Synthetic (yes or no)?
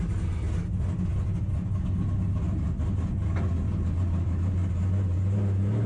no